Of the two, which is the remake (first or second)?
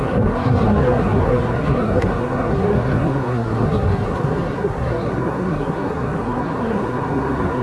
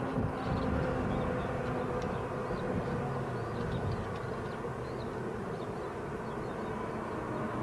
first